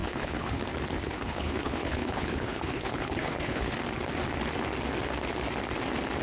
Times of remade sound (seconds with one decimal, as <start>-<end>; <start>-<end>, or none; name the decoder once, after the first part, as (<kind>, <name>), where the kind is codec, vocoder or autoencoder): 0.0-0.6 (codec, HILCodec); 1.0-3.7